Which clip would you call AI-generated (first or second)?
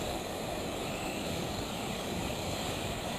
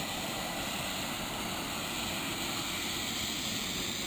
first